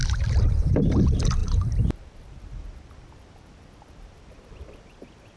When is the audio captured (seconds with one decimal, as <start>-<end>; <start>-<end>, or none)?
0.0-5.4